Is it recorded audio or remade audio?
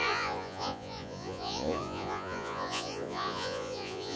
remade